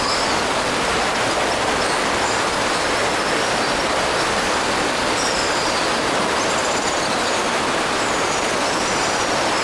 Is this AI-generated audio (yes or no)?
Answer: no